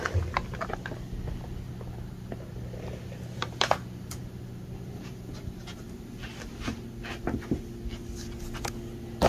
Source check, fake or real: real